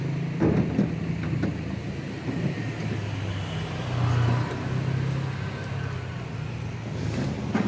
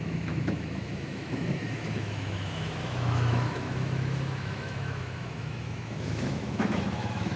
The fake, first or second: second